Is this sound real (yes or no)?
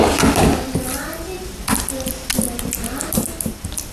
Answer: yes